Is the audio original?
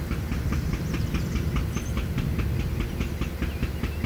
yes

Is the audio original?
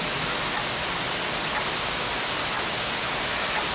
yes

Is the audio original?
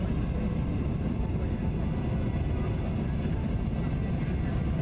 yes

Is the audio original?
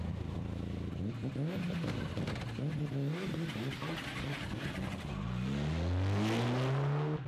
yes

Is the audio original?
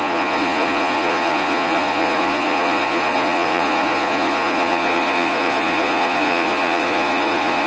no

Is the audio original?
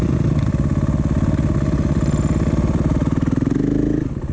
yes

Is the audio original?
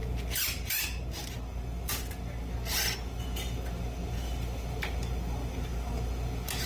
yes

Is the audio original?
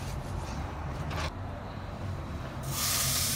no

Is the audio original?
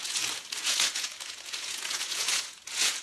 no